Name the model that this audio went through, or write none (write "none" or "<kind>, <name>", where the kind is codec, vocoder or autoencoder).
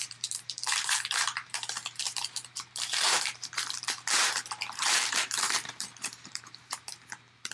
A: vocoder, BigVGAN v2